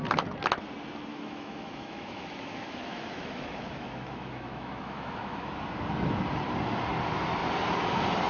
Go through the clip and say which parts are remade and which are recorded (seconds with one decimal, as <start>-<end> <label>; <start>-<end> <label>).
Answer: 0.0-1.1 recorded; 1.1-5.5 remade; 5.5-8.3 recorded